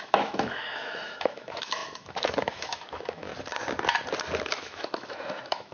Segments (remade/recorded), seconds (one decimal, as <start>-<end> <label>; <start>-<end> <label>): 0.0-3.3 remade; 3.3-4.4 recorded; 4.4-5.7 remade

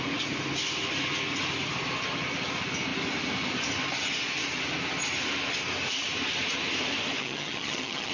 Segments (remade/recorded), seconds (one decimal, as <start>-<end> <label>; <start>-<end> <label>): 0.0-7.2 recorded; 7.2-8.1 remade

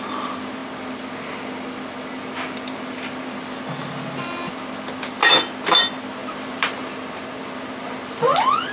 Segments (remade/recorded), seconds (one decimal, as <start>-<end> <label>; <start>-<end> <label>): 0.0-6.2 recorded; 6.2-7.4 remade; 7.4-8.7 recorded

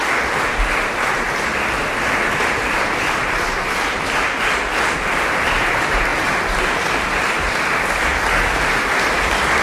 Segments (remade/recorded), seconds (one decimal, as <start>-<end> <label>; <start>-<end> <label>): 0.0-0.5 remade; 0.5-1.1 recorded; 1.1-8.1 remade; 8.1-8.6 recorded; 8.6-9.6 remade